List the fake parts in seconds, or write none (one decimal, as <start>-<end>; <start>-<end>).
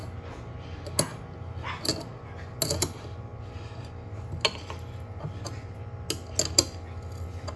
none